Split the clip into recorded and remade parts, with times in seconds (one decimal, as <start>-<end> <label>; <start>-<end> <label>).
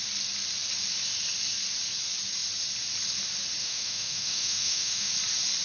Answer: 0.0-3.6 recorded; 3.6-5.1 remade; 5.1-5.6 recorded